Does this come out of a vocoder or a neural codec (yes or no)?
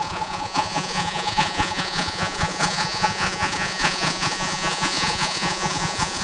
yes